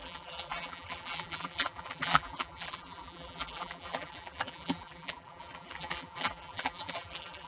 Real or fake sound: fake